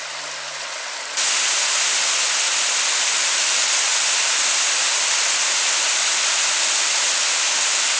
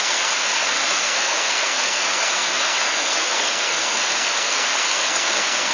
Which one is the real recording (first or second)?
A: first